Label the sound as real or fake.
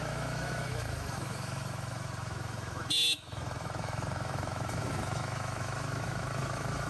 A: fake